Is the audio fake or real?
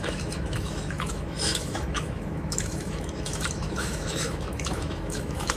fake